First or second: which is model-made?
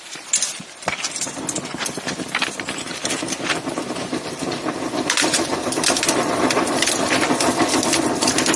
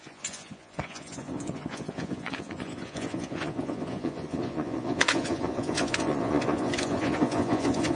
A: second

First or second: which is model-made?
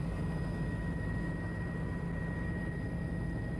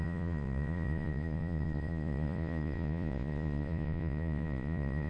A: second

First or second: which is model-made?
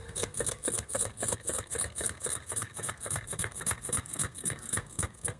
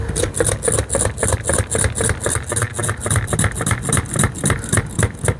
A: first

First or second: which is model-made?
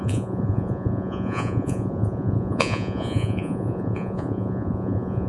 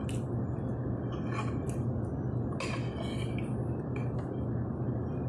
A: first